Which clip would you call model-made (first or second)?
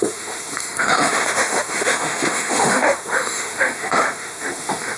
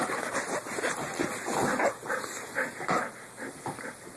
first